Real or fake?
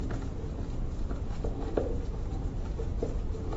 real